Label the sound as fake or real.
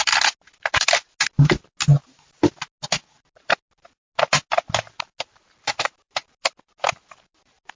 real